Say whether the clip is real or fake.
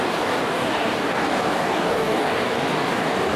fake